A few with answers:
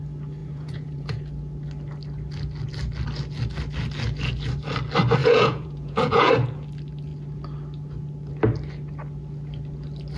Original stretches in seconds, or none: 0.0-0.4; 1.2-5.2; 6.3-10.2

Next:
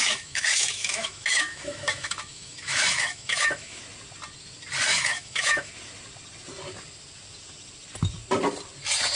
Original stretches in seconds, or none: 3.8-4.9; 5.7-9.2